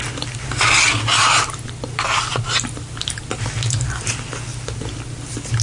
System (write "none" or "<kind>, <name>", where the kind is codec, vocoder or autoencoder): none